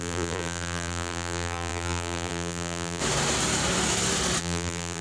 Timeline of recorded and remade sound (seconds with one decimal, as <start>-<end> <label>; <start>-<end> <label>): 0.0-3.0 remade; 3.0-4.4 recorded; 4.4-5.0 remade